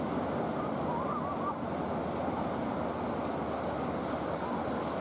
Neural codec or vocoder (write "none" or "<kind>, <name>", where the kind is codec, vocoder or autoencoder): none